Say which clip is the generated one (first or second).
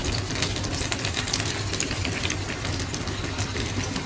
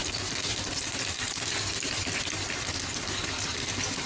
second